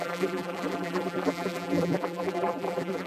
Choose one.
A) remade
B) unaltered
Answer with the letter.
A